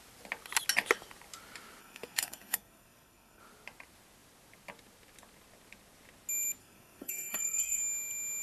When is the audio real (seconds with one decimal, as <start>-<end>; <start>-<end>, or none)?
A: 0.0-1.8; 3.4-6.6; 7.8-8.4